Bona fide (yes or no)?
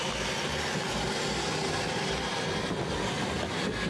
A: yes